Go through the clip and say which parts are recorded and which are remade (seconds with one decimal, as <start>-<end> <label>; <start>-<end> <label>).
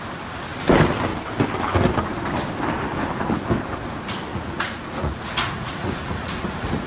0.0-4.3 recorded; 4.3-6.9 remade